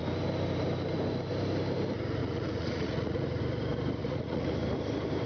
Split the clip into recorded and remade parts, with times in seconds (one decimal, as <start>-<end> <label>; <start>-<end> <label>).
0.0-2.2 recorded; 2.2-3.4 remade; 3.4-4.0 recorded; 4.0-4.5 remade; 4.5-5.3 recorded